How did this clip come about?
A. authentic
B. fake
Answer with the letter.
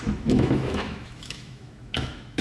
B